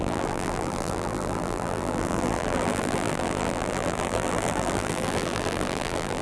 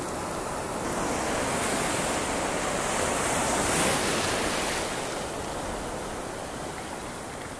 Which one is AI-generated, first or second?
first